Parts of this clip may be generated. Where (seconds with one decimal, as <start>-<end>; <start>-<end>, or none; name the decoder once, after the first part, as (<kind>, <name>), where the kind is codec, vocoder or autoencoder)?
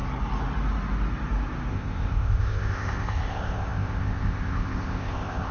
1.7-5.5 (codec, ZipCodec)